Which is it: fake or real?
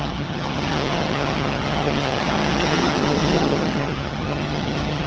fake